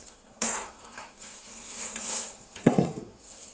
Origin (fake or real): fake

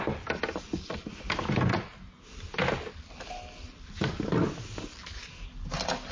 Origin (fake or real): real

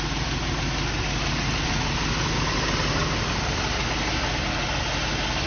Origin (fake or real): real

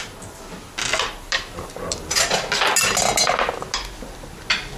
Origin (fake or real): real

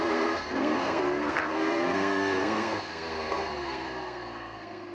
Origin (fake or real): fake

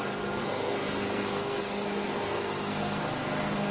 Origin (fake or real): fake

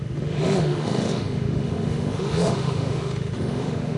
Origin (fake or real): fake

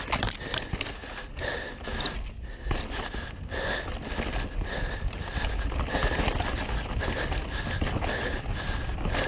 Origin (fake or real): real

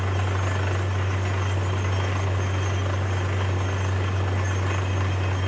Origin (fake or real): real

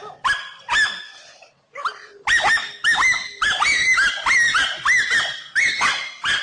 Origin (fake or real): real